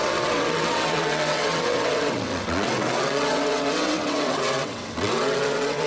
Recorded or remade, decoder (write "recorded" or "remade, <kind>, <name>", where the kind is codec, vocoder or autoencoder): remade, vocoder, WaveNeXt